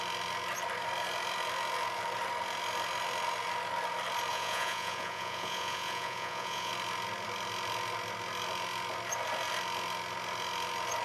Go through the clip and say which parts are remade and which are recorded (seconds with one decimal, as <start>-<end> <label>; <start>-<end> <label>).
0.0-4.3 recorded; 4.3-6.7 remade; 6.7-11.0 recorded